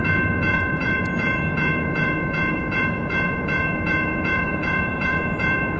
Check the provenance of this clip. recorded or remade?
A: remade